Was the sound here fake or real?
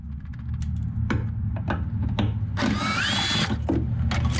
real